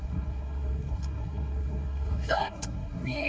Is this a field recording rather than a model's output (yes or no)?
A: no